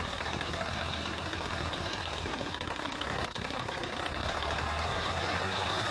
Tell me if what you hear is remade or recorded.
remade